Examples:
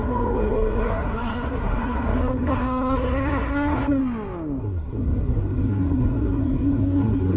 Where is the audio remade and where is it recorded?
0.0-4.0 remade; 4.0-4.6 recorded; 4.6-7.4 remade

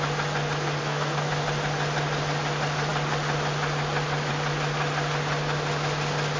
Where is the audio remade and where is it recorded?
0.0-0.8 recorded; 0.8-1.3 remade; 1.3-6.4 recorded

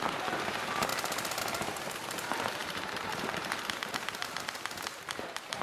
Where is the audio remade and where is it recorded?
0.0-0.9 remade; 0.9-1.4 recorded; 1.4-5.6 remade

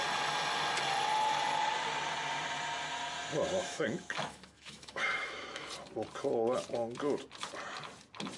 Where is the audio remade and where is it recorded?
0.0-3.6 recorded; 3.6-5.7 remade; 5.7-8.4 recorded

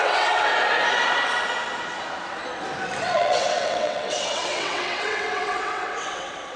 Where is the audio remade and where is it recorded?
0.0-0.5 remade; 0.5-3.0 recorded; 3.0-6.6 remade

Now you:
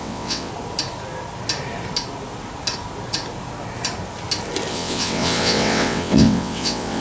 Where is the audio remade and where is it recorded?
0.0-0.5 remade; 0.5-4.7 recorded; 4.7-7.0 remade

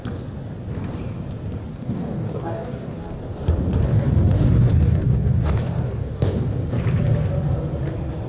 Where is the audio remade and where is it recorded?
0.0-1.7 recorded; 1.7-3.2 remade; 3.2-3.9 recorded; 3.9-6.5 remade; 6.5-8.3 recorded

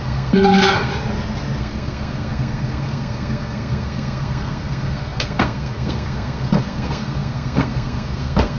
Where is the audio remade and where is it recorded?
0.0-0.9 remade; 0.9-1.6 recorded; 1.6-8.6 remade